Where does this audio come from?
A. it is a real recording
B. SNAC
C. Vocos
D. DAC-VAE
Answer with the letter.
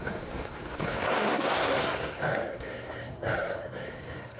B